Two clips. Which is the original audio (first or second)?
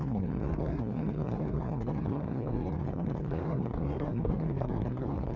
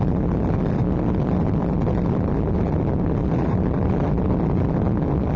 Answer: second